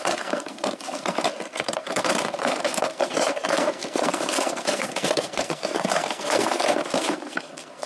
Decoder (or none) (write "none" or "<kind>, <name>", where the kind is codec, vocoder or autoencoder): codec, SNAC